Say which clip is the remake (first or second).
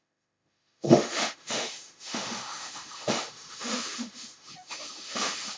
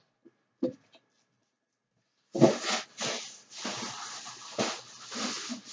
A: first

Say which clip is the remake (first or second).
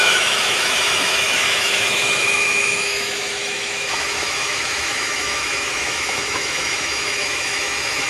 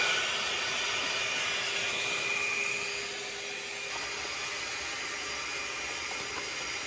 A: first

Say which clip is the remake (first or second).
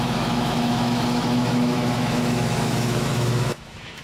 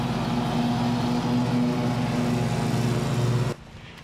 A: first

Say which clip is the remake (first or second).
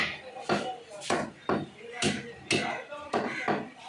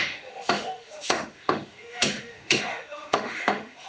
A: second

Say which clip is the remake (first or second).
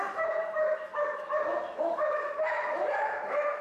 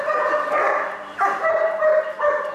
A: first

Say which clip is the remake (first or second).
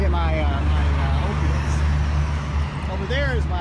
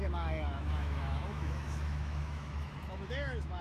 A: second